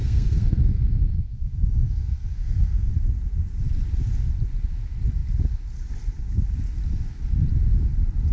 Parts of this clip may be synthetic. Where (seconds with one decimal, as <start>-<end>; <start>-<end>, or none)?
0.0-2.9